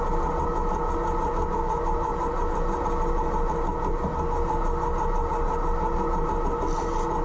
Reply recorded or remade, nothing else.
recorded